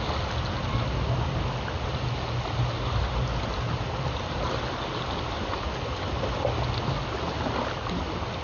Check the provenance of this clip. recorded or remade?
recorded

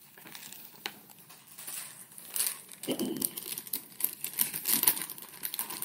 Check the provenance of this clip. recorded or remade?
recorded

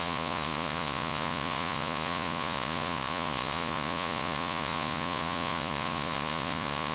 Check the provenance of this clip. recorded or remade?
remade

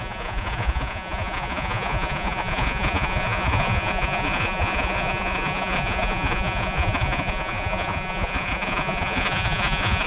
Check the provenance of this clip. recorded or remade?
remade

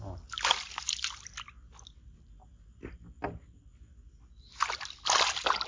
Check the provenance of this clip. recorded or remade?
recorded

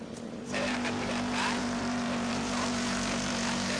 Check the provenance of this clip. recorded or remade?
remade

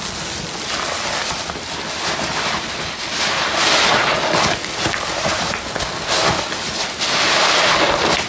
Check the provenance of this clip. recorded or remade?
recorded